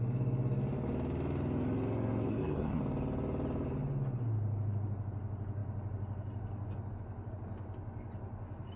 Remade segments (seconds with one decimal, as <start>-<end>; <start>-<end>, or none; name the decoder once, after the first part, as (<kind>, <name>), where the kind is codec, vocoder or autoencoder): 2.3-2.8 (codec, SNAC)